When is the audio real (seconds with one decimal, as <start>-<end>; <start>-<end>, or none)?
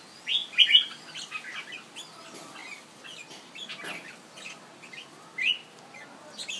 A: 0.0-6.6